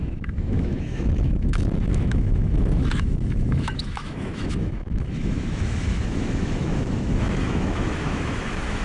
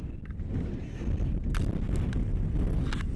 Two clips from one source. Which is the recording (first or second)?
second